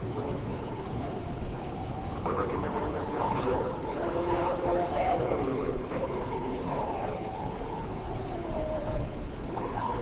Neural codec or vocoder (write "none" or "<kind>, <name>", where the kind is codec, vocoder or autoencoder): codec, HILCodec